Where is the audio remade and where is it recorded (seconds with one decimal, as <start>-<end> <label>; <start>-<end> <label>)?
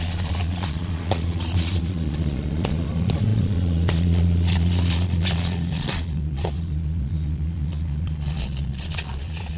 0.0-9.6 remade